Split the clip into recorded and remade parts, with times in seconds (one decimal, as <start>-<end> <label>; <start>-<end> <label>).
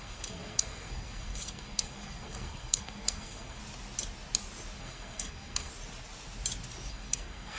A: 0.0-3.6 remade; 3.6-4.8 recorded; 4.8-5.7 remade; 5.7-6.9 recorded; 6.9-7.6 remade